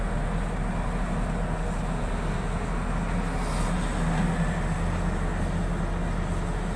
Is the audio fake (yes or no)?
no